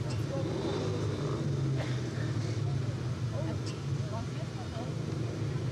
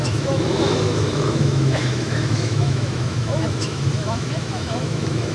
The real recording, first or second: first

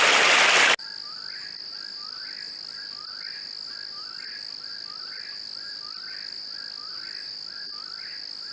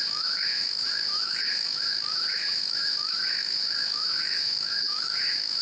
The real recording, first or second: first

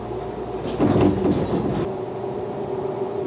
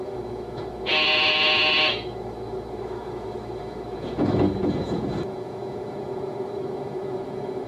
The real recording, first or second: first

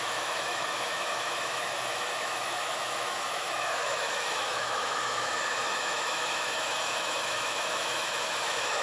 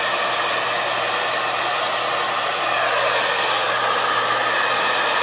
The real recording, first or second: second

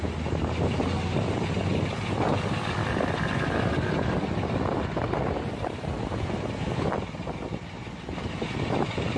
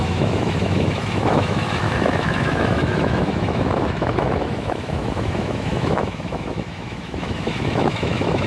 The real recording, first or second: first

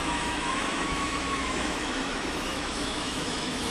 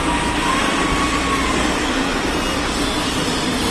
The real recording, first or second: second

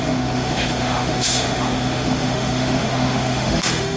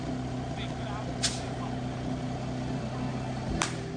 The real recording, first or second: second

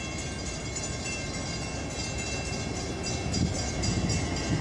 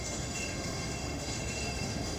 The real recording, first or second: first